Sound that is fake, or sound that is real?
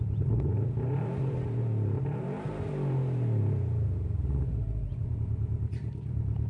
fake